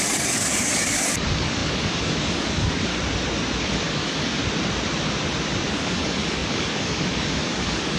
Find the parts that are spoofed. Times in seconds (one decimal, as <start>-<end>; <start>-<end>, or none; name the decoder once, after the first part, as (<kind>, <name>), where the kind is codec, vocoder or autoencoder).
0.0-2.9 (codec, DAC); 3.6-4.4; 5.7-8.0